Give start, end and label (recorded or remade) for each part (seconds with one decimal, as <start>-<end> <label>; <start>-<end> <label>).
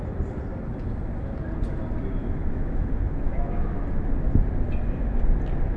0.0-2.2 recorded; 2.2-3.8 remade; 3.8-5.8 recorded